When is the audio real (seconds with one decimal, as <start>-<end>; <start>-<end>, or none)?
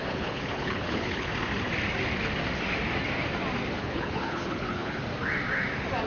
1.3-3.8; 5.0-6.1